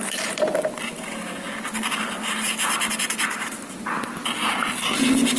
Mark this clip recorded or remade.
recorded